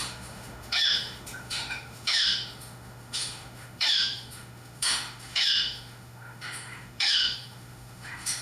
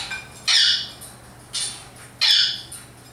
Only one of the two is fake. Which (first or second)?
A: first